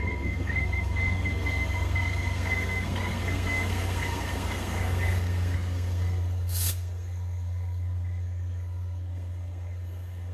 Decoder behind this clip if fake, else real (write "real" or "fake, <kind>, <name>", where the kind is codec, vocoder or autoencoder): fake, codec, SNAC